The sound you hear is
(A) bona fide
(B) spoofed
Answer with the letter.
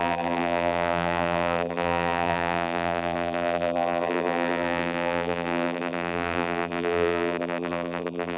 B